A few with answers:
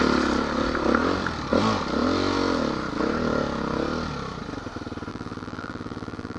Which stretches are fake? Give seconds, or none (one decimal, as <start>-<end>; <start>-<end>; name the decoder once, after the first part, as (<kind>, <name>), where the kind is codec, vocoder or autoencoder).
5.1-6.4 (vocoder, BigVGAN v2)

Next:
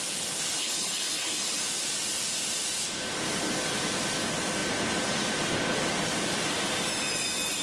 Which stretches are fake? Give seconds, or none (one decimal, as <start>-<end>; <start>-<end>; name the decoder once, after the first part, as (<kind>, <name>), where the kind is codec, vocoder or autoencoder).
0.6-1.6 (codec, HILCodec)

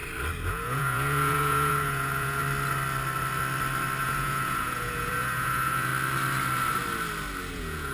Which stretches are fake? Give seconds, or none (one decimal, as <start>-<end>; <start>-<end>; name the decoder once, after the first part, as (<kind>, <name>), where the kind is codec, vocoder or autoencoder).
0.5-2.4 (vocoder, Vocos); 4.0-5.9; 7.5-7.9

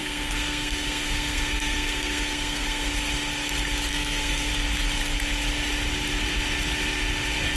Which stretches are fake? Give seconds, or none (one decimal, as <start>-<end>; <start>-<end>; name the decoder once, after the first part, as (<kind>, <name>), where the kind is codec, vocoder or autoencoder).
0.0-2.9 (codec, SNAC); 3.9-4.5